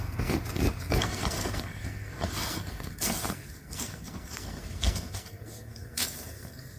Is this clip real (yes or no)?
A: no